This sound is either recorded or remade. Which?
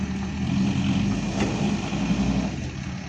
recorded